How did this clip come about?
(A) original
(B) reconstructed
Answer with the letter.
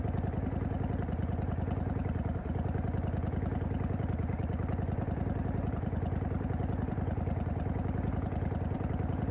B